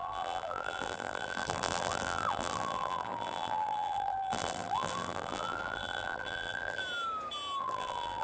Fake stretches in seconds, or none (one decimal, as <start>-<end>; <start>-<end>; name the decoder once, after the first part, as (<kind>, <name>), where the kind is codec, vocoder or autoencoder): 0.0-6.8 (vocoder, BigVGAN v2); 7.6-8.2